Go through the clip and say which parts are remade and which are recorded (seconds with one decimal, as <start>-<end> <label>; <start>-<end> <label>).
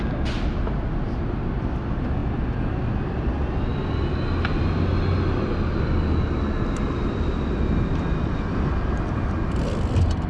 0.0-10.3 recorded